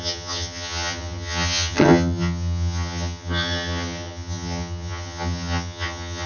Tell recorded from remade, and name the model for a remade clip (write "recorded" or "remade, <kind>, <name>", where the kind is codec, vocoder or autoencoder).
remade, vocoder, HiFi-GAN